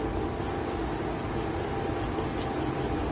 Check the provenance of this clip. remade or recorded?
recorded